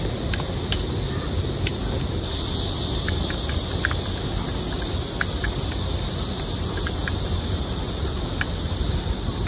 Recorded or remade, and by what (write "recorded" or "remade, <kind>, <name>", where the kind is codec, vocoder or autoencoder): recorded